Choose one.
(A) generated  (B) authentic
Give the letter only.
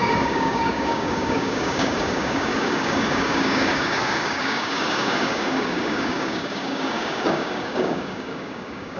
A